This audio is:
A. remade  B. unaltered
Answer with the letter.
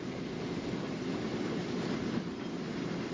B